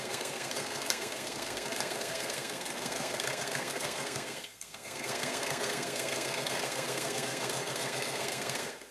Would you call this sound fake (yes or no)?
yes